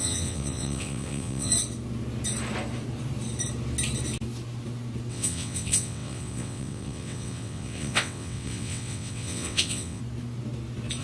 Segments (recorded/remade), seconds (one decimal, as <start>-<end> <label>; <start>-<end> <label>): 0.0-1.5 remade; 1.5-5.1 recorded; 5.1-10.0 remade; 10.0-11.0 recorded